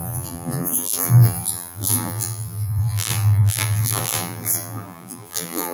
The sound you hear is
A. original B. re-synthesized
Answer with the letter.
B